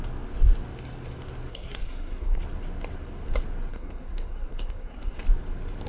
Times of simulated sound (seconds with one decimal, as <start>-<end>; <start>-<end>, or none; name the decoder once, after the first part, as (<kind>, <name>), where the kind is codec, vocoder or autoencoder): 1.5-2.4 (codec, SNAC); 3.7-5.2